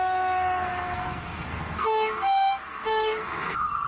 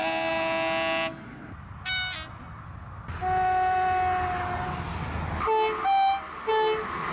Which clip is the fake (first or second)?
first